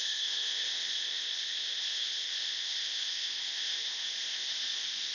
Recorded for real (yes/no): no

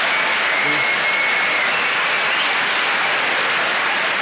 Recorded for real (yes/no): yes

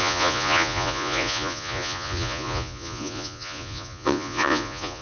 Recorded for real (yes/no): no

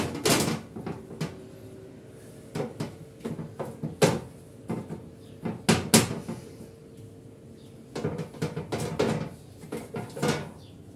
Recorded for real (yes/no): yes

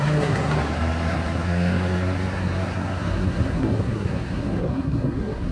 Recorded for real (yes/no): no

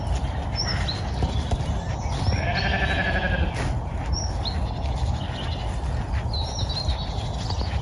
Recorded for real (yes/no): yes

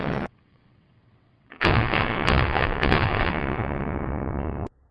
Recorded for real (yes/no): no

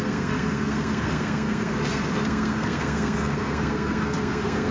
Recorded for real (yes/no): no